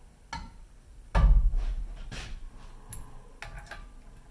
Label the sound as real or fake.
real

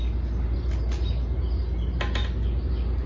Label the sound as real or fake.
real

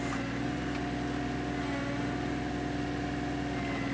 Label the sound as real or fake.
real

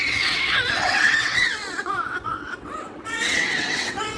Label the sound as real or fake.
fake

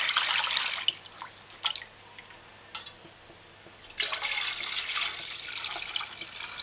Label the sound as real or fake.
real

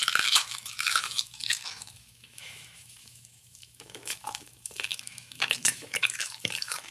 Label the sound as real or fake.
fake